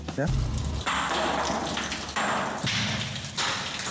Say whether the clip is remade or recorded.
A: recorded